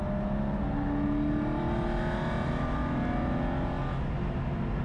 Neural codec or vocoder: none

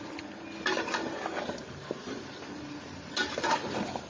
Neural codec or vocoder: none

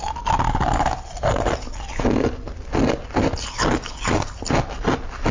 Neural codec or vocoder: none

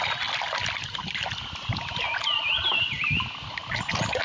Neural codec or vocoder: none